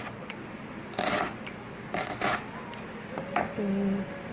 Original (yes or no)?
yes